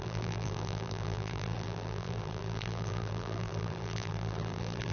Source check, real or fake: fake